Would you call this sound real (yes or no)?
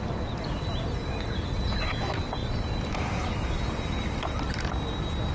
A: yes